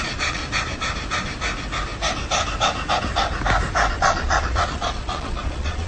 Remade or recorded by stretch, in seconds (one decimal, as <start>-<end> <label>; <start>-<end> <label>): 0.0-0.4 remade; 0.4-3.9 recorded; 3.9-5.9 remade